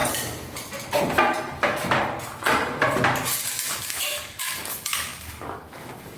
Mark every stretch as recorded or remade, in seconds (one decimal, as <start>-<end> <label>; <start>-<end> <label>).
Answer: 0.0-3.7 recorded; 3.7-6.2 remade